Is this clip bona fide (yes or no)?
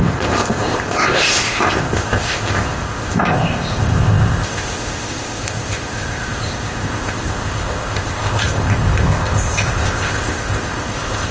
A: no